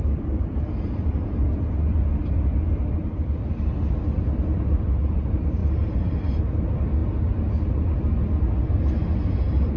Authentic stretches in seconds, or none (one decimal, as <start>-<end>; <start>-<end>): 0.0-9.8

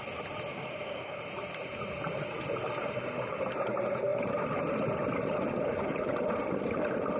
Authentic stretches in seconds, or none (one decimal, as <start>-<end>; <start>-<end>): 0.0-0.5; 1.2-7.2

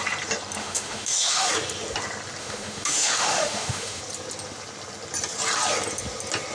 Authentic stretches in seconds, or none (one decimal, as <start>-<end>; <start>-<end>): 0.0-0.6; 1.5-2.4; 4.0-6.5